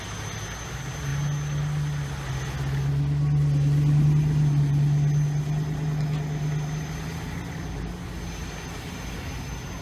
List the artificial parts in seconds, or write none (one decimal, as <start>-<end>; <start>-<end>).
none